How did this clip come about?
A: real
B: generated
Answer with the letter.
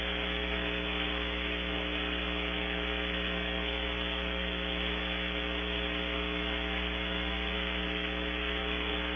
B